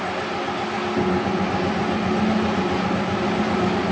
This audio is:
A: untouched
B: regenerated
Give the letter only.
A